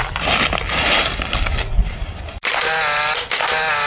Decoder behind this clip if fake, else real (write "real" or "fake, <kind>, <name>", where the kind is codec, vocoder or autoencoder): real